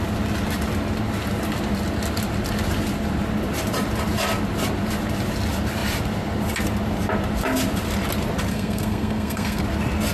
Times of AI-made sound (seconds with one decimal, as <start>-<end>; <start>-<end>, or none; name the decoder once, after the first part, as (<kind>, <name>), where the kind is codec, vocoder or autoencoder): 8.5-9.6 (codec, SNAC)